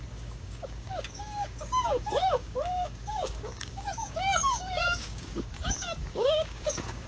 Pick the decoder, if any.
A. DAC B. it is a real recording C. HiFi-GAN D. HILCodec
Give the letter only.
A